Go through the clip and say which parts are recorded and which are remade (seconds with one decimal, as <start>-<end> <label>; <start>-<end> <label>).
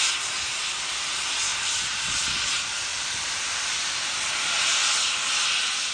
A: 0.0-1.5 recorded; 1.5-2.0 remade; 2.0-2.9 recorded; 2.9-4.1 remade; 4.1-5.9 recorded